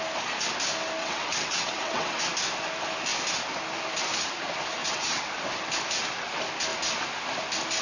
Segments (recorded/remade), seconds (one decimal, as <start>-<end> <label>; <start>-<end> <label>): 0.0-1.0 recorded; 1.0-2.2 remade; 2.2-4.8 recorded; 4.8-5.3 remade; 5.3-7.8 recorded